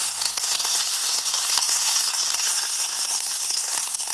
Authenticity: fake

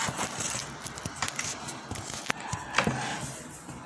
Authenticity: real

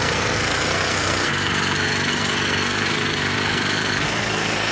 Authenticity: fake